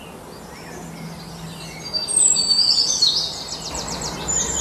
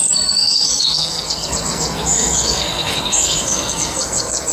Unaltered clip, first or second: first